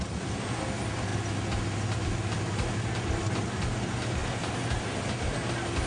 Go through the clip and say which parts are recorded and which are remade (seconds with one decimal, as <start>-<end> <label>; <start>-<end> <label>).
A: 0.0-5.9 recorded